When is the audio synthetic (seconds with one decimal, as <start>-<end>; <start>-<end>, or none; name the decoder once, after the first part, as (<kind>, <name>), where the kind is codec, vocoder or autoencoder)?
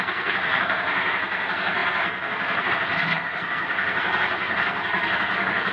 0.0-5.7 (codec, SNAC)